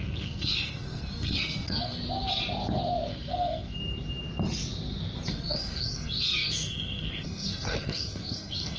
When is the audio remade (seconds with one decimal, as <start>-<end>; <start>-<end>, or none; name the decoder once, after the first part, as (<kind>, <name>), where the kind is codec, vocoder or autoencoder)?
0.0-2.0 (codec, SNAC); 3.1-3.8; 5.3-8.8